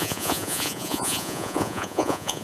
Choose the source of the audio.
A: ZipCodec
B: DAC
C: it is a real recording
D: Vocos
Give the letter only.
D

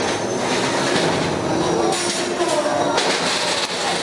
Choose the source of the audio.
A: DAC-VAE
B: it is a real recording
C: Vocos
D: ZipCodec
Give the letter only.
B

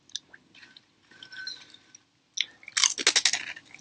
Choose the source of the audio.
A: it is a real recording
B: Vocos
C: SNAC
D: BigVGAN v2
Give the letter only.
A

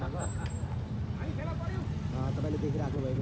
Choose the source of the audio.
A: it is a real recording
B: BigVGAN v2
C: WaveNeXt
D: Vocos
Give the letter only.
A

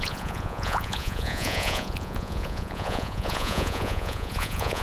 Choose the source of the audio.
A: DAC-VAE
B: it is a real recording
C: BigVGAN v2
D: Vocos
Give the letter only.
D